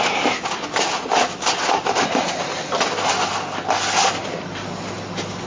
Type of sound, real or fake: real